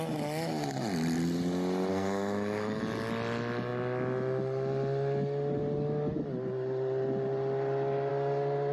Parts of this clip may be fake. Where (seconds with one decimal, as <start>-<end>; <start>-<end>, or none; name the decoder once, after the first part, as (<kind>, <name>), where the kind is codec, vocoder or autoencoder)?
1.9-2.8 (codec, SNAC)